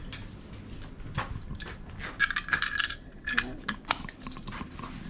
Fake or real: real